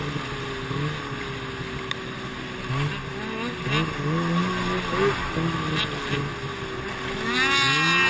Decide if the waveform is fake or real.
real